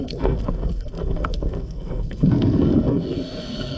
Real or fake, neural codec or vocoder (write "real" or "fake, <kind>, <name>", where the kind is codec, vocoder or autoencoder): fake, codec, SNAC